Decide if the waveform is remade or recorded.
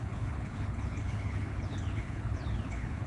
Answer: remade